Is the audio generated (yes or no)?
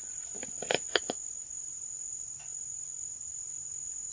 no